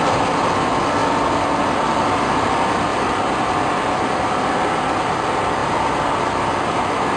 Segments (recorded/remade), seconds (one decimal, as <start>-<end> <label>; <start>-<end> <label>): 0.0-7.2 recorded